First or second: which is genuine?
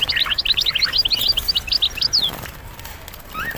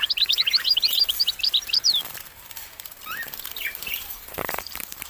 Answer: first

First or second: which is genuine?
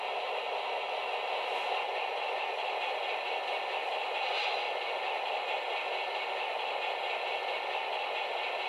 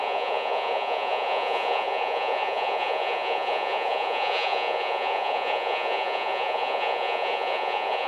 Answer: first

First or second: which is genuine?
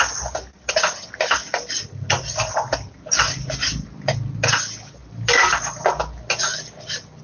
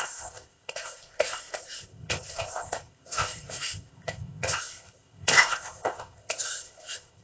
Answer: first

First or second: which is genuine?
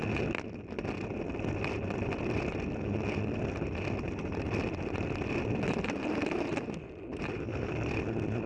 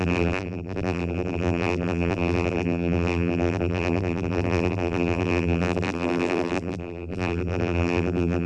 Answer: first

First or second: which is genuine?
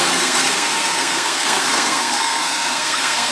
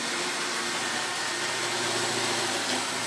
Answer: second